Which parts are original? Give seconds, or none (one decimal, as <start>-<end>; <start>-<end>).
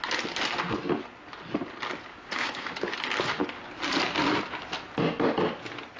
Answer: 0.0-2.1; 2.9-6.0